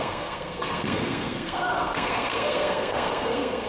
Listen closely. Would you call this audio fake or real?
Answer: fake